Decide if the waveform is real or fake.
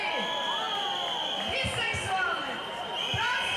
real